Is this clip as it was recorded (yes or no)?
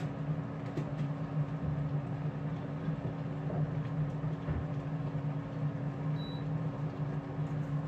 yes